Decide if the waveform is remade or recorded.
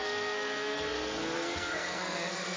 remade